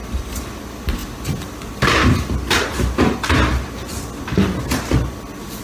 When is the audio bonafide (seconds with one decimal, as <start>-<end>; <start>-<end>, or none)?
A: 0.0-5.6